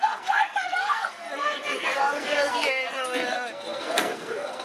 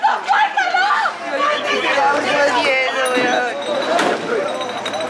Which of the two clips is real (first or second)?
second